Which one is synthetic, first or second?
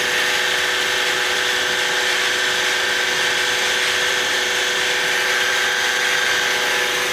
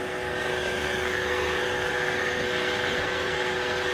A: second